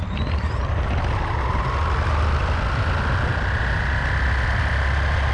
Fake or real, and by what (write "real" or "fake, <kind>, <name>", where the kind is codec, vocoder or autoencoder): real